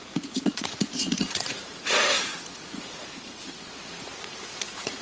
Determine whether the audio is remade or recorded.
remade